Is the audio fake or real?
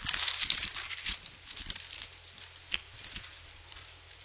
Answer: real